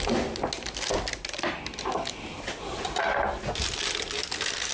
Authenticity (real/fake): real